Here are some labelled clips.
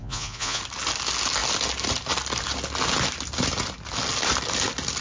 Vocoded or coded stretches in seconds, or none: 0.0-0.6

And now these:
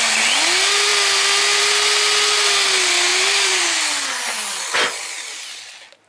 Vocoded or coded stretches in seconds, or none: 3.1-3.6

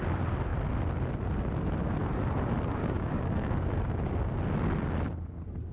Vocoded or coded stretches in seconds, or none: 2.8-3.7

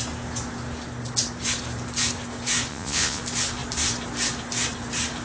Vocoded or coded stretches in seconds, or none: 2.7-3.2